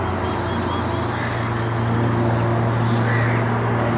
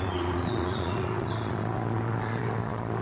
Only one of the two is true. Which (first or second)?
first